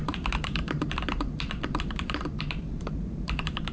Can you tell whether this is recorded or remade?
remade